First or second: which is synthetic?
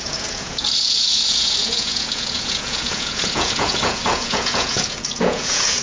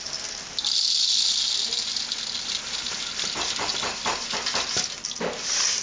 first